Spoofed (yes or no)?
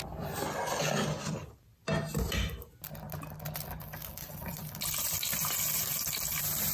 no